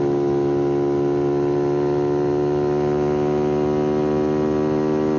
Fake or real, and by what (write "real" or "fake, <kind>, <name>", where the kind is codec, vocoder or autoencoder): real